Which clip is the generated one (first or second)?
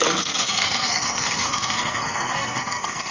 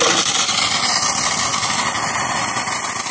first